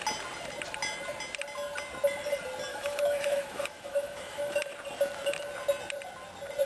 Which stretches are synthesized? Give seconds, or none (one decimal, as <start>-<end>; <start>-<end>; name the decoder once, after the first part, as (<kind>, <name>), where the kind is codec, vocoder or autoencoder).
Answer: 2.7-4.6 (autoencoder, DAC-VAE)